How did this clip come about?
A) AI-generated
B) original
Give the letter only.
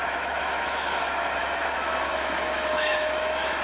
A